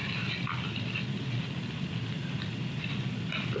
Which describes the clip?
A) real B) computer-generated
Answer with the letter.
A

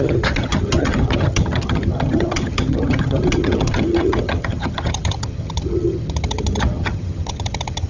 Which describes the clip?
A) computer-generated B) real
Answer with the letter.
A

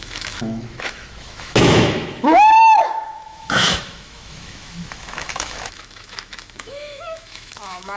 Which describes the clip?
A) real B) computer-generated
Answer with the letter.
B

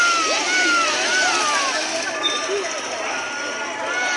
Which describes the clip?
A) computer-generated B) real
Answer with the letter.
B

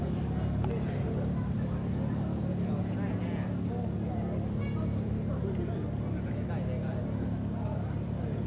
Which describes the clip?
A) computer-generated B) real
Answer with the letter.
B